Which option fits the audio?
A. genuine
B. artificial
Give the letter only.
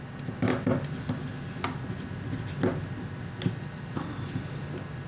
A